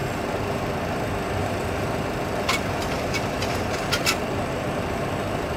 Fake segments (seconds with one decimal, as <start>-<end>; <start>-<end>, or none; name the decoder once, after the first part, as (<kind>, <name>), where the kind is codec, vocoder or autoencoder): 0.0-0.7 (vocoder, BigVGAN v2); 1.4-4.5